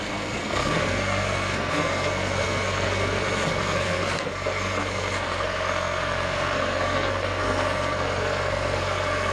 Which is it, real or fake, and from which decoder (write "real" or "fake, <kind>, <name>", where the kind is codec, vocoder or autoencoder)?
fake, codec, SNAC